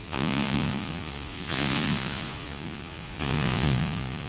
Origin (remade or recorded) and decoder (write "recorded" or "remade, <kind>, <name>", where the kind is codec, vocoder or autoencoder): remade, vocoder, Vocos